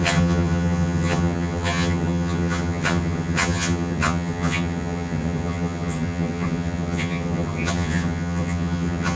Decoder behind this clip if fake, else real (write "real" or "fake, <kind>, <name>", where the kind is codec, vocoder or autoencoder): fake, vocoder, HiFi-GAN